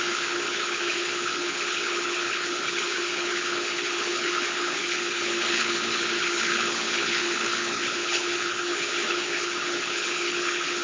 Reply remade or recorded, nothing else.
remade